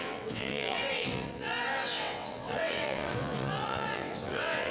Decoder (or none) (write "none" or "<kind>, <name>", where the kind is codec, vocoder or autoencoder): vocoder, WaveNeXt